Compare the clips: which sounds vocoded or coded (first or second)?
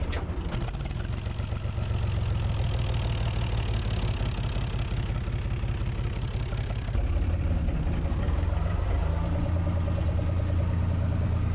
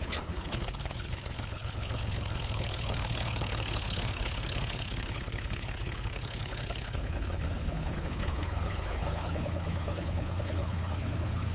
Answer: second